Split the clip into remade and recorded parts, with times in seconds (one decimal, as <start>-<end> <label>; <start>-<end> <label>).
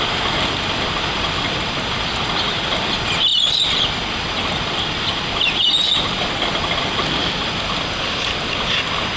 0.0-9.2 recorded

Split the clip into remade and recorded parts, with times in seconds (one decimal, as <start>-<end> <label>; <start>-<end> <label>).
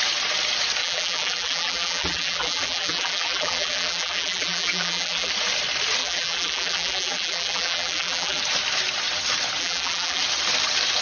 0.0-0.8 recorded; 0.8-5.3 remade; 5.3-6.0 recorded; 6.0-8.4 remade; 8.4-9.6 recorded; 9.6-10.2 remade; 10.2-11.0 recorded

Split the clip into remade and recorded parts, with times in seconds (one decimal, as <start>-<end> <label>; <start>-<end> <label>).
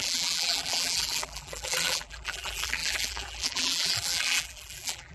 0.0-5.1 remade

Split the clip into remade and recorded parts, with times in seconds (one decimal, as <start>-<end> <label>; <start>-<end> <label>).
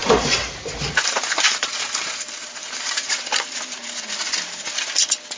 0.0-3.2 remade; 3.2-5.4 recorded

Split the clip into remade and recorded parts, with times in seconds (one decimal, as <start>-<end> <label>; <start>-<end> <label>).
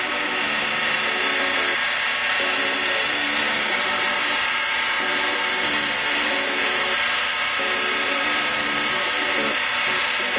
0.0-10.4 remade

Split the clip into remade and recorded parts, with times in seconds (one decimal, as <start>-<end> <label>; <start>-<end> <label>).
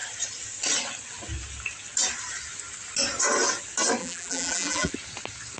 0.0-4.0 recorded; 4.0-4.9 remade; 4.9-5.6 recorded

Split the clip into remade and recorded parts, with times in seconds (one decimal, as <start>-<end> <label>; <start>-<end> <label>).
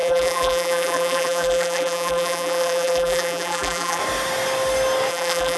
0.0-4.0 remade; 4.0-5.1 recorded; 5.1-5.6 remade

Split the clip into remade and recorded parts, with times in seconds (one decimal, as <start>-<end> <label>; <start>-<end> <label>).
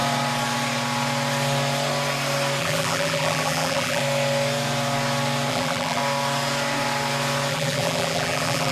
0.0-2.6 recorded; 2.6-4.0 remade; 4.0-5.5 recorded; 5.5-6.0 remade; 6.0-7.5 recorded; 7.5-8.7 remade